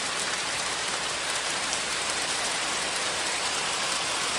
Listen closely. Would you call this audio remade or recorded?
remade